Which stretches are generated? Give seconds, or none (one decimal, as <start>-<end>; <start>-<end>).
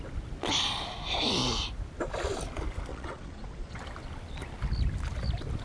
2.9-3.8